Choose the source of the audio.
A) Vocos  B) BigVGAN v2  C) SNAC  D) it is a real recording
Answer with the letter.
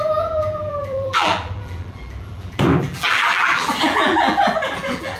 B